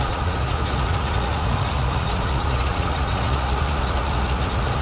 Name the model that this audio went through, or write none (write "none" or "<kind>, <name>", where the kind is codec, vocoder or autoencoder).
vocoder, Vocos